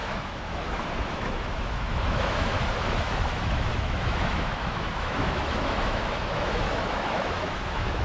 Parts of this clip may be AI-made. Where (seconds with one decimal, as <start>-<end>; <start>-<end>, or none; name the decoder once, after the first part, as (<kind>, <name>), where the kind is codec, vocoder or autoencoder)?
0.0-8.0 (autoencoder, DAC-VAE)